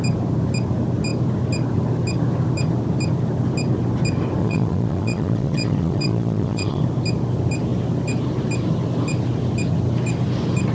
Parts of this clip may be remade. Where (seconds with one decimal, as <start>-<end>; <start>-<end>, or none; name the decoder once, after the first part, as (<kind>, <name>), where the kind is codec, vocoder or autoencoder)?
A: 4.4-6.8 (vocoder, Vocos)